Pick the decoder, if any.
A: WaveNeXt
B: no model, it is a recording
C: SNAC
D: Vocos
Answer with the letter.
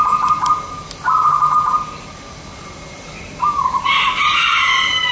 B